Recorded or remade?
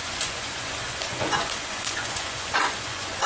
remade